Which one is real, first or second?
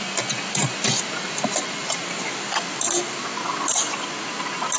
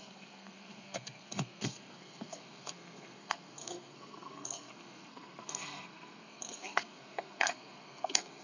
first